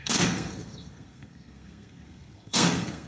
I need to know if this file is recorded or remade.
remade